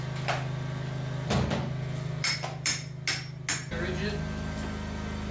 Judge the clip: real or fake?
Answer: real